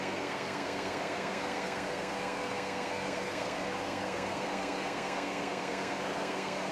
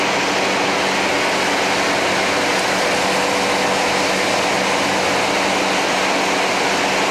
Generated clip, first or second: first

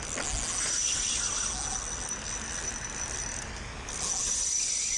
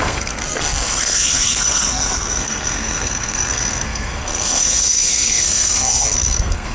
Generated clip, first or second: second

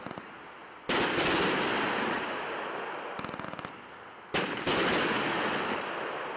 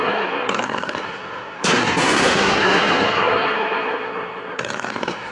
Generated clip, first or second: second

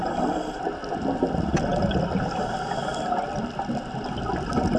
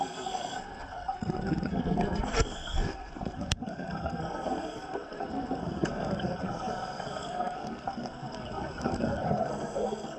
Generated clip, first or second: second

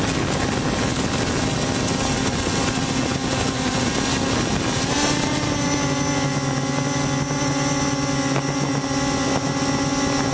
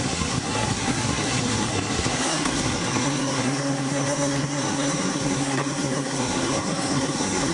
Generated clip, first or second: second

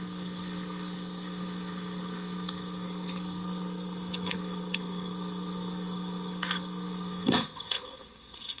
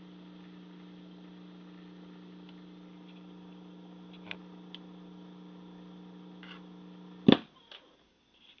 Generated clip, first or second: first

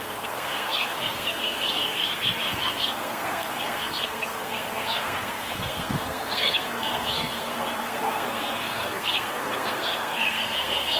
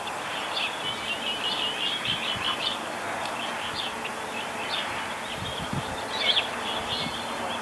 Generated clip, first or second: first